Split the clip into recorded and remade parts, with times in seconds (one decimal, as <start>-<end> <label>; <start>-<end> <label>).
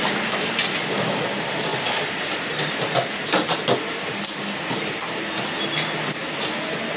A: 0.0-7.0 recorded